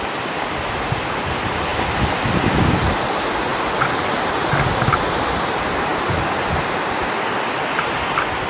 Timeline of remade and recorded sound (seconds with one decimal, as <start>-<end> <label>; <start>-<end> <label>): 0.0-8.5 recorded